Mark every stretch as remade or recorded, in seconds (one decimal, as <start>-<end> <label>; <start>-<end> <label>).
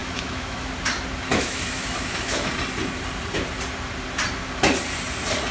0.0-0.7 remade; 0.7-1.3 recorded; 1.3-2.5 remade; 2.5-5.5 recorded